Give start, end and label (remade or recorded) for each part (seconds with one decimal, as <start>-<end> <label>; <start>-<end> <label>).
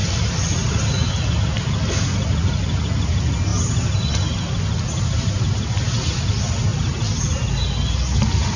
0.0-1.1 remade; 1.1-6.7 recorded; 6.7-7.2 remade; 7.2-8.6 recorded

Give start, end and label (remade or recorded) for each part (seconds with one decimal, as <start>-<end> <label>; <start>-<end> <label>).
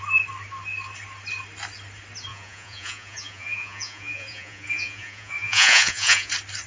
0.0-2.3 recorded; 2.3-6.3 remade; 6.3-6.7 recorded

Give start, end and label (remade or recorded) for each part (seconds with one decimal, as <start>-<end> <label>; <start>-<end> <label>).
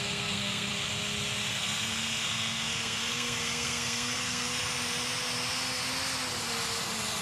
0.0-0.7 remade; 0.7-1.5 recorded; 1.5-4.6 remade; 4.6-7.2 recorded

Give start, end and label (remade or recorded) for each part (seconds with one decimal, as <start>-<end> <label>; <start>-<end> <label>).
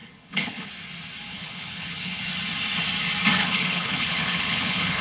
0.0-0.7 remade; 0.7-1.3 recorded; 1.3-2.2 remade; 2.2-3.4 recorded; 3.4-5.0 remade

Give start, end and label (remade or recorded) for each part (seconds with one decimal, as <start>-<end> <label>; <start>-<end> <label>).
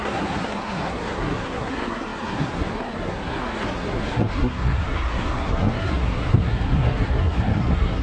0.0-8.0 remade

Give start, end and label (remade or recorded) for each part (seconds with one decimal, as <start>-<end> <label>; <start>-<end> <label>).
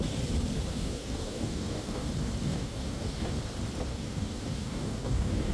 0.0-0.7 recorded; 0.7-2.1 remade; 2.1-2.5 recorded; 2.5-3.3 remade; 3.3-3.9 recorded; 3.9-5.5 remade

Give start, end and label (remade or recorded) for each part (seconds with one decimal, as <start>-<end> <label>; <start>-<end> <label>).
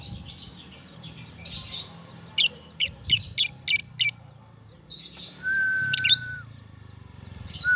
0.0-7.8 recorded